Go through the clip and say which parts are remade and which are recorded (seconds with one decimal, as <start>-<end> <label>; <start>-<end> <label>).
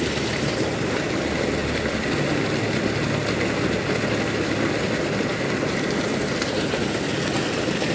0.0-7.9 recorded